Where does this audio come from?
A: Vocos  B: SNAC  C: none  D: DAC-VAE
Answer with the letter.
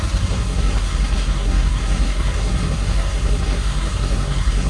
B